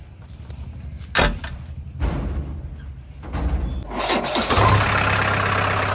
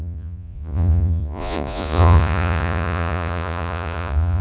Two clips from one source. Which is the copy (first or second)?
second